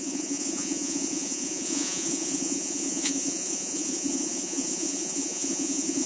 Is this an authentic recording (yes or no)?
no